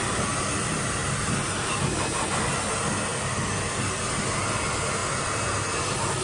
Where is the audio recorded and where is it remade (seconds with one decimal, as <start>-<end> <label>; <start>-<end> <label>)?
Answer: 0.0-6.2 recorded